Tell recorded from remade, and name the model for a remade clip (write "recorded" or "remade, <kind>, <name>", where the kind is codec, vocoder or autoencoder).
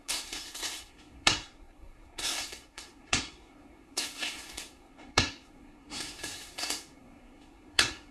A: remade, codec, SNAC